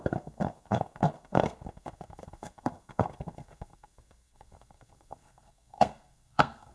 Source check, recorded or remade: remade